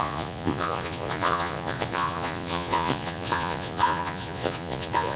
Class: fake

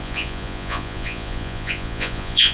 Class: fake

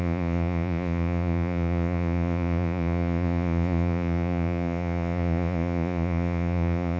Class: fake